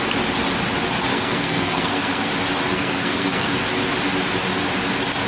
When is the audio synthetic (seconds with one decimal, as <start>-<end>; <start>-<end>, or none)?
1.1-2.3; 2.7-3.5